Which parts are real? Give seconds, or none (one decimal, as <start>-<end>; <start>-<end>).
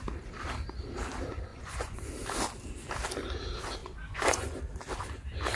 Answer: 0.0-1.5; 2.1-3.8; 4.6-5.6